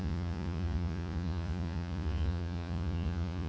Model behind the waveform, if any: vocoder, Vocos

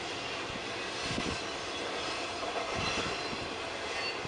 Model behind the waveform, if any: none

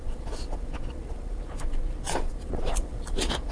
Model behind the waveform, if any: vocoder, Vocos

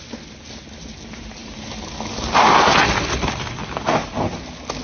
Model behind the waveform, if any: none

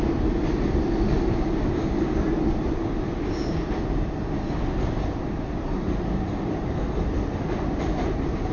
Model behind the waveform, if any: none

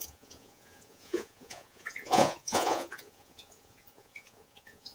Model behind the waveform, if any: vocoder, Vocos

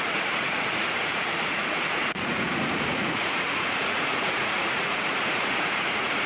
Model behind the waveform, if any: vocoder, Vocos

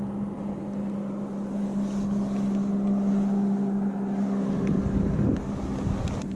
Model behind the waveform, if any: none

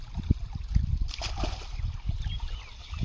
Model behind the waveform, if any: none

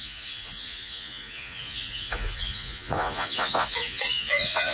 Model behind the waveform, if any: vocoder, Vocos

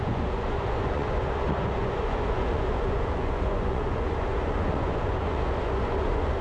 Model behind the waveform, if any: vocoder, Vocos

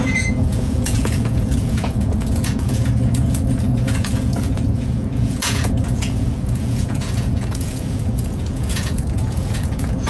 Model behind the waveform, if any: vocoder, Vocos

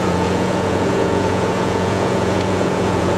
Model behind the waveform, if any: vocoder, Vocos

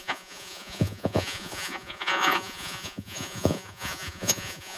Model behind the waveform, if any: vocoder, Vocos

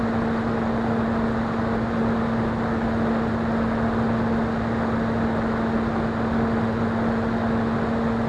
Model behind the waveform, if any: none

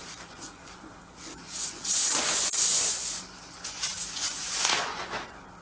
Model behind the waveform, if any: vocoder, Vocos